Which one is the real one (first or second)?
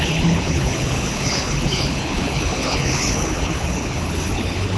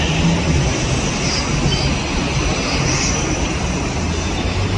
second